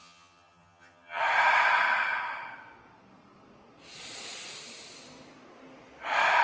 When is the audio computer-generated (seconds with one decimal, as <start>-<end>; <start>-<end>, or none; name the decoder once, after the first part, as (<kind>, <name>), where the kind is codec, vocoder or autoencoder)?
0.0-1.2 (vocoder, HiFi-GAN)